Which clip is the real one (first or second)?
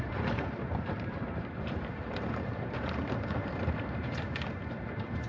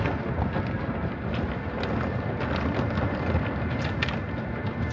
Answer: second